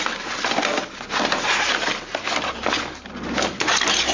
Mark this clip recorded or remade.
recorded